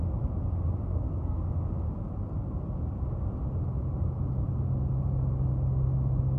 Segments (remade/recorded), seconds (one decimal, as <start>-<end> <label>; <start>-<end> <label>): 0.0-0.9 recorded; 0.9-1.4 remade; 1.4-6.4 recorded